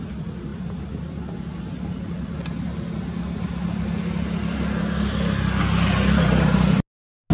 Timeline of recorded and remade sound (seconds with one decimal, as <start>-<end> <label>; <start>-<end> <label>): 0.0-7.3 recorded

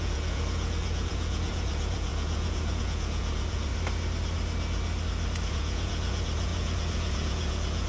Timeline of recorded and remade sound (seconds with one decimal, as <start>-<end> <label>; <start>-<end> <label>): 0.0-3.7 remade; 3.7-5.5 recorded; 5.5-7.9 remade

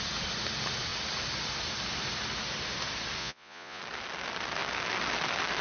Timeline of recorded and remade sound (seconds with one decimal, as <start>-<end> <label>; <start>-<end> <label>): 0.0-3.2 recorded; 3.2-3.8 remade; 3.8-5.6 recorded

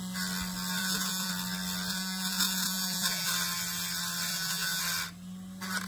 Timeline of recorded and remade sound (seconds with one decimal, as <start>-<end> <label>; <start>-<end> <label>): 0.0-0.8 recorded; 0.8-1.3 remade; 1.3-1.9 recorded; 1.9-3.3 remade; 3.3-4.3 recorded; 4.3-4.8 remade; 4.8-5.9 recorded

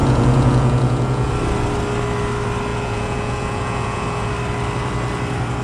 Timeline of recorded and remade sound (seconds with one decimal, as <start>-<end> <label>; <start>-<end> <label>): 0.0-1.3 remade; 1.3-2.7 recorded; 2.7-4.3 remade; 4.3-5.6 recorded

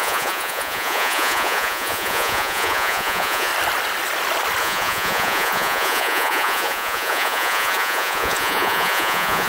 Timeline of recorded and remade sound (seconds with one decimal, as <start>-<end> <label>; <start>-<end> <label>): 0.0-3.5 remade; 3.5-4.6 recorded; 4.6-9.5 remade

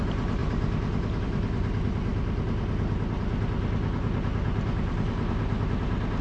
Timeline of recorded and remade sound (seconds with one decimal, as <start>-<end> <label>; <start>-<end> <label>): 0.0-6.2 recorded